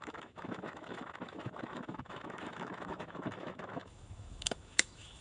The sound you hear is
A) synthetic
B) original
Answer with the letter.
A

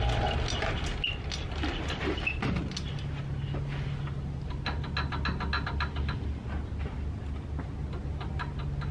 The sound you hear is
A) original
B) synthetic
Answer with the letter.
A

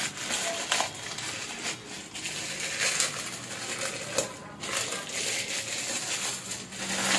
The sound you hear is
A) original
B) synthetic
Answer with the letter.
A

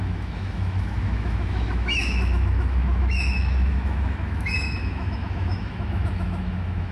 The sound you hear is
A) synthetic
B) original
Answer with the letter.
A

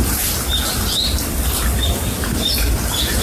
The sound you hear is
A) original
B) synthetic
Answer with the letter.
A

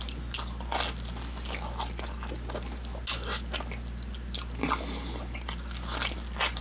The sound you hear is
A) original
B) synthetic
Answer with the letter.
A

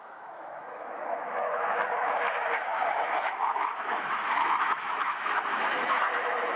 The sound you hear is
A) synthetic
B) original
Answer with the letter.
A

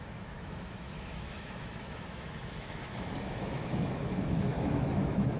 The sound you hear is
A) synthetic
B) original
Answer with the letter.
A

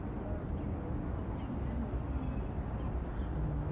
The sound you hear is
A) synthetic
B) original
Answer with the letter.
B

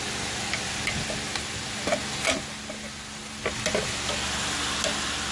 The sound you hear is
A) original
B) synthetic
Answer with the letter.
A